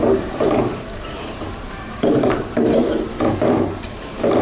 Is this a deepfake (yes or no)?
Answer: yes